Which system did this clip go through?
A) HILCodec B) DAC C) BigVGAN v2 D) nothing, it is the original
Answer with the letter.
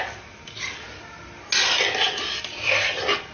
D